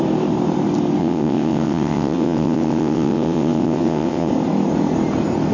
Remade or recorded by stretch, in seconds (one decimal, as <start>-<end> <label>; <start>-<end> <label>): 0.0-1.0 recorded; 1.0-4.3 remade; 4.3-5.5 recorded